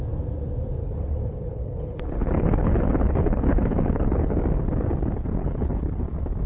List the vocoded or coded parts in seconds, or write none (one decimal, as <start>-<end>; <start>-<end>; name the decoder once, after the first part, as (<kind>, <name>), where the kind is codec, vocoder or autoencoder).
0.8-4.4 (codec, HILCodec); 5.4-6.0